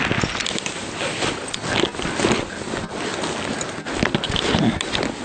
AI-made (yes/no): no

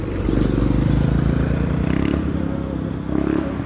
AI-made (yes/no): no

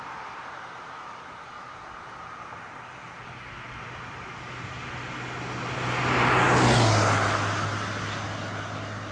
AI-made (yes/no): no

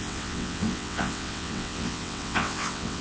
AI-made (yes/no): yes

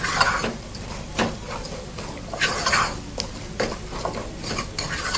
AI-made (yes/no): no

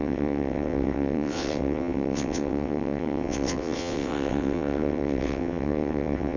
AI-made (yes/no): yes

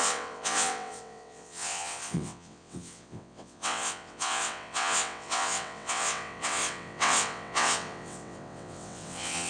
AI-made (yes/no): yes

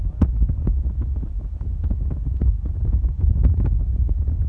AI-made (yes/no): no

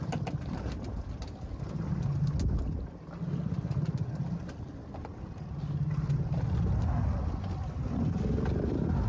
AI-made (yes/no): no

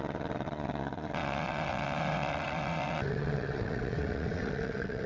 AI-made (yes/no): yes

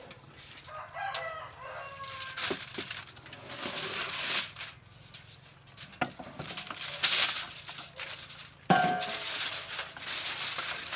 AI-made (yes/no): no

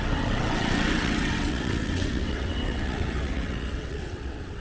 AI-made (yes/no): yes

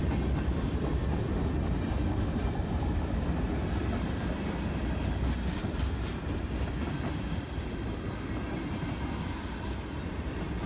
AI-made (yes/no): no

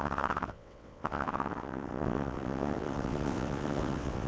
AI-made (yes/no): yes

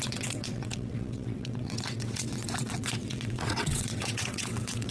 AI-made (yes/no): yes